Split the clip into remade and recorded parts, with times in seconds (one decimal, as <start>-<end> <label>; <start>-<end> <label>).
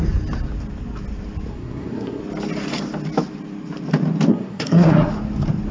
0.0-1.5 recorded; 1.5-2.2 remade; 2.2-4.3 recorded; 4.3-5.1 remade; 5.1-5.7 recorded